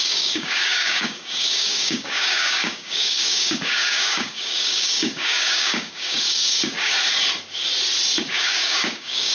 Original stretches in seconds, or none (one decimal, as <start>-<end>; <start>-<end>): 6.9-8.2